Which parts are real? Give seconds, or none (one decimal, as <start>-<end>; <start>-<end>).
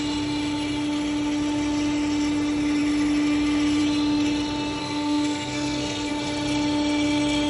0.0-4.8; 6.1-7.5